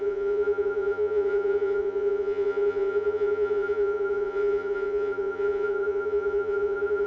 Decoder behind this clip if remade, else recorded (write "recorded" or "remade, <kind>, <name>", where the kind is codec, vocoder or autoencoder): remade, vocoder, Vocos